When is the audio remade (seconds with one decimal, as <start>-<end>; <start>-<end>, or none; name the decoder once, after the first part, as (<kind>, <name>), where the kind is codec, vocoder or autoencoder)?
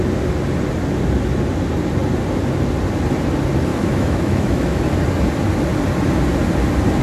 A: 3.7-4.8 (autoencoder, DAC-VAE)